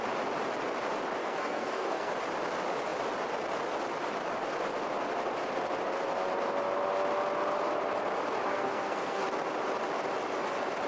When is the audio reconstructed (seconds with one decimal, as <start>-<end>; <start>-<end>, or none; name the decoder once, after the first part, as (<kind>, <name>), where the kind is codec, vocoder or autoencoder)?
1.2-2.1 (codec, SNAC); 8.5-9.2